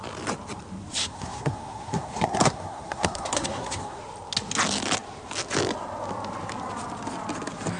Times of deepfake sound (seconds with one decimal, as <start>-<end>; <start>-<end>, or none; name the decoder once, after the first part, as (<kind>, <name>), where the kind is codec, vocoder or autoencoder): 1.0-4.0 (codec, SNAC)